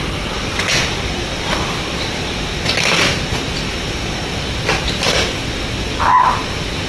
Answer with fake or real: real